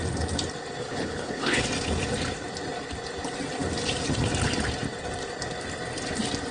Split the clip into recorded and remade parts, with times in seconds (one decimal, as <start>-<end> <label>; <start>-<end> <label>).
0.0-0.8 recorded; 0.8-1.6 remade; 1.6-6.5 recorded